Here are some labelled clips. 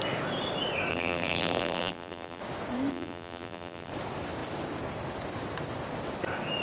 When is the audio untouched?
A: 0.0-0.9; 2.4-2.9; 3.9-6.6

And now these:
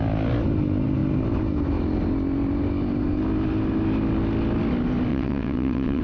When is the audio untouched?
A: 0.0-5.1

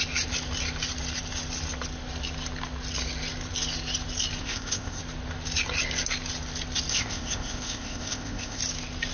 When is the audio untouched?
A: 0.0-4.4; 5.0-6.9; 8.6-9.1

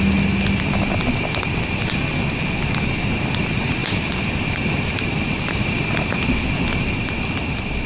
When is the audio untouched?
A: 0.0-7.9

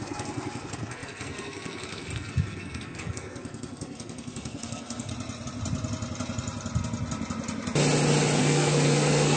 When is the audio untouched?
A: 5.1-8.4

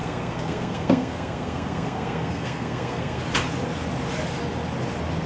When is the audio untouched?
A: 3.2-5.3